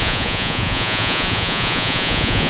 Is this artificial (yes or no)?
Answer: yes